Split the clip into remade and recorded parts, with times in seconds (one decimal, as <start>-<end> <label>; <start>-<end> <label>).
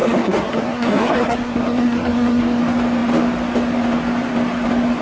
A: 0.0-2.6 remade; 2.6-5.0 recorded